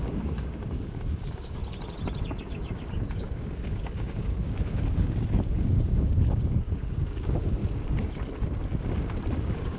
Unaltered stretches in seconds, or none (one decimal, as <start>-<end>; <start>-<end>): 1.6-2.4; 7.6-9.4